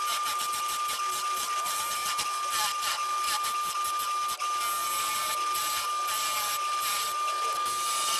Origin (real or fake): real